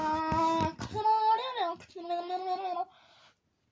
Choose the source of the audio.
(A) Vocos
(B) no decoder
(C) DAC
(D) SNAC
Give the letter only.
B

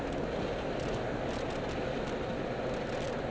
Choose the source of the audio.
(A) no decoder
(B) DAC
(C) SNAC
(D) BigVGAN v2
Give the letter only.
A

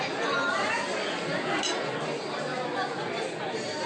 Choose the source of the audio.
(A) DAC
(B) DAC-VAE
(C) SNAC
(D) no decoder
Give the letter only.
D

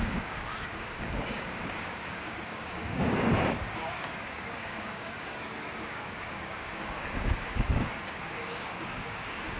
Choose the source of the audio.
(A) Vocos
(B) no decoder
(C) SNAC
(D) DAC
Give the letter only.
D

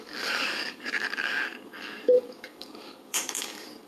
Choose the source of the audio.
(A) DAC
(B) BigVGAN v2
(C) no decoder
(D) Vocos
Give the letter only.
A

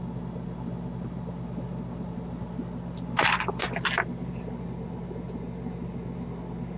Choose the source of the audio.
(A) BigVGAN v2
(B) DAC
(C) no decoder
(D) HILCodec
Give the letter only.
C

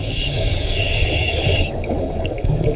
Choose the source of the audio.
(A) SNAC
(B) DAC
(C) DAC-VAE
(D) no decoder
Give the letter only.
B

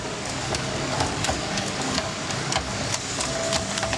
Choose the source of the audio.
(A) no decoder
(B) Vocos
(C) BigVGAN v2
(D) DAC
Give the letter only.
D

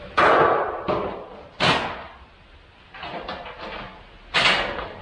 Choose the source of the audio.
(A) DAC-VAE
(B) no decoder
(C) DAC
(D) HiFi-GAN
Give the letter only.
B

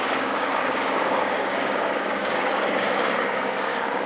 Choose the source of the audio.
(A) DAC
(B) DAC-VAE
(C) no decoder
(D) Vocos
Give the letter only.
A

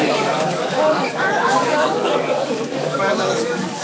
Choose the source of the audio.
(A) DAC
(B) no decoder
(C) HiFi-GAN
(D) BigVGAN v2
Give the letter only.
A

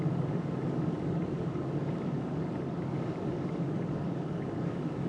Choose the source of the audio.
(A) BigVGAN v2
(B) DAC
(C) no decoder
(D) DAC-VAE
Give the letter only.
B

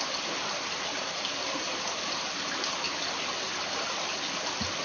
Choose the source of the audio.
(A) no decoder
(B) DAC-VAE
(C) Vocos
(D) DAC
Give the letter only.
A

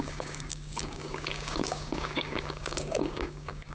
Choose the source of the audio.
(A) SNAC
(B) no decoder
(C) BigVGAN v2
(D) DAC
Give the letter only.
D